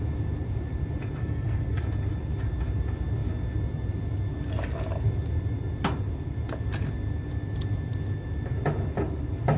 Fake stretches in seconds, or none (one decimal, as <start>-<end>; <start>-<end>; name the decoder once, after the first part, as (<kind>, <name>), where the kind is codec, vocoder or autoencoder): 1.2-1.8 (codec, SNAC)